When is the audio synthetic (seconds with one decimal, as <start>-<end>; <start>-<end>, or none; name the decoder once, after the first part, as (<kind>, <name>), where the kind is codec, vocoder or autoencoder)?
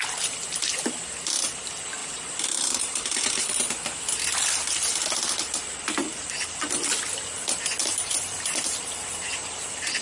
2.0-3.6 (vocoder, BigVGAN v2); 6.0-6.6; 7.8-10.0